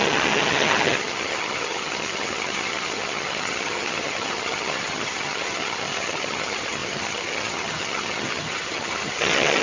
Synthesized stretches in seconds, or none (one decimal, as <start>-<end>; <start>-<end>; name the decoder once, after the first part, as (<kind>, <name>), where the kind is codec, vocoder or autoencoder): 0.0-9.6 (vocoder, HiFi-GAN)